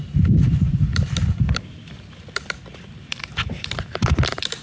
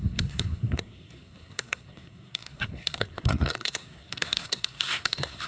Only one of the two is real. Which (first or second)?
first